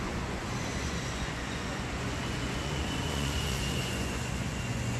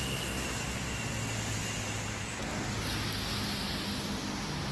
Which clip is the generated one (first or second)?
first